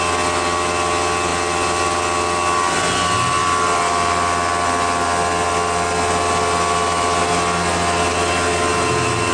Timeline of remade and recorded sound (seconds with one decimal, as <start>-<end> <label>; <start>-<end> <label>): 0.0-9.3 recorded